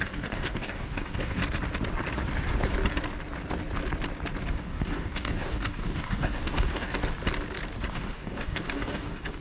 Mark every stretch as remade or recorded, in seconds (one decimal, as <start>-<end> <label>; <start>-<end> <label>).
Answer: 0.0-1.4 remade; 1.4-4.5 recorded; 4.5-7.0 remade; 7.0-7.9 recorded; 7.9-9.4 remade